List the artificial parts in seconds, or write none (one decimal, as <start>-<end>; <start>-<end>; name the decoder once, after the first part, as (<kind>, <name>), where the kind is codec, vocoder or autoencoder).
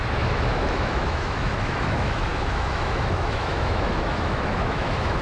0.0-5.2 (autoencoder, DAC-VAE)